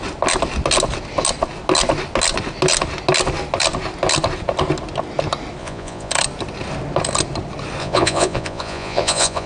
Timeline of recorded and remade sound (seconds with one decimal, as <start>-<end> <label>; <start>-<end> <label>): 0.0-5.6 recorded; 5.6-6.1 remade; 6.1-7.8 recorded; 7.8-9.5 remade